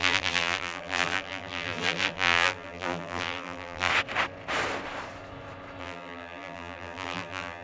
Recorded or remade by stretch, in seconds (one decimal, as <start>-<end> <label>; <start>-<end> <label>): 0.0-3.9 remade; 3.9-5.8 recorded; 5.8-7.6 remade